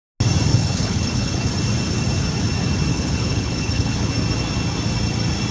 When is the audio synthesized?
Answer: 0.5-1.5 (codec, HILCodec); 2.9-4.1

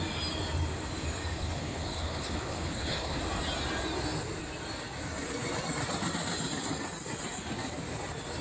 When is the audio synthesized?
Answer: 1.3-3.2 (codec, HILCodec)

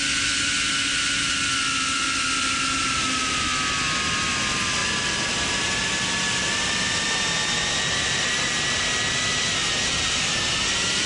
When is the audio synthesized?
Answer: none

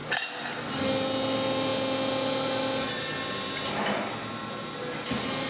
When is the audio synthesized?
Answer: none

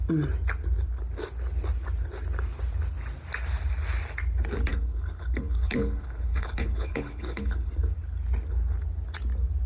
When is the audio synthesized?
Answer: 4.7-7.7 (codec, HILCodec)

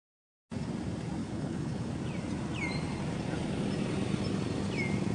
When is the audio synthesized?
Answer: 1.2-1.9 (codec, HILCodec)